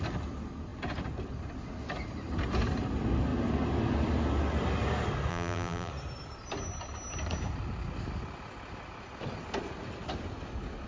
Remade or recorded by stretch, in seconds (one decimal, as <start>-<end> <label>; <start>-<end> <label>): 0.0-5.3 recorded; 5.3-5.9 remade; 5.9-10.9 recorded